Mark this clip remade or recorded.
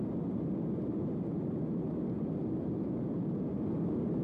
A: recorded